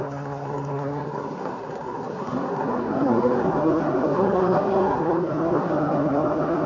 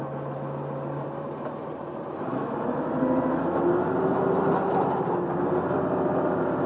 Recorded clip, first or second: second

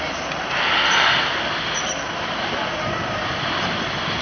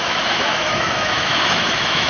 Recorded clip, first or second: first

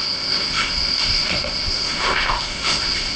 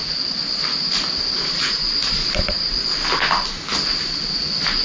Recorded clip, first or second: second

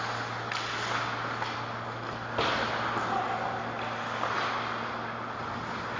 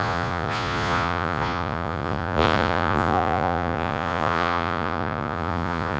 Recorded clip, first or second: first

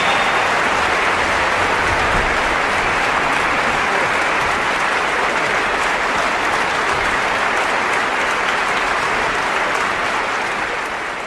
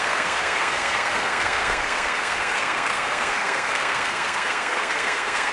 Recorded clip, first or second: first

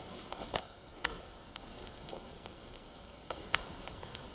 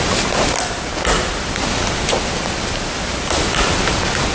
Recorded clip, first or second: second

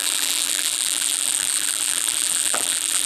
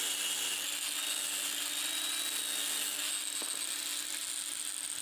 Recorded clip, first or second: second